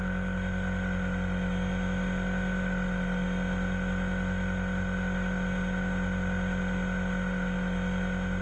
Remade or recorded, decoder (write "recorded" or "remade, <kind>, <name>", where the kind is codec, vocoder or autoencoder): recorded